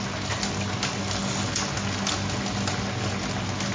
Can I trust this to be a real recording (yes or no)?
yes